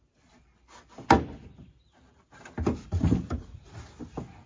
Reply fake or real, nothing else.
real